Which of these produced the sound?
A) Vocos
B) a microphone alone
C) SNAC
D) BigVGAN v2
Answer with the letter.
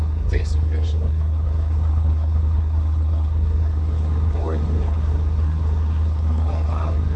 C